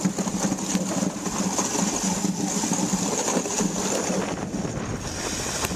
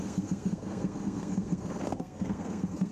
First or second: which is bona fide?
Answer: first